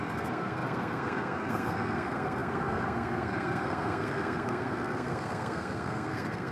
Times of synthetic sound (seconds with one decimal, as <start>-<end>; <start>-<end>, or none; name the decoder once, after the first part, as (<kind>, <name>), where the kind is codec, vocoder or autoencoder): 0.0-6.5 (codec, SNAC)